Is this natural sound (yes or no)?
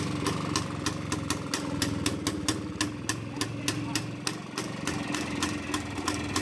yes